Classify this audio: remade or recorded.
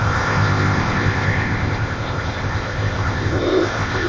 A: remade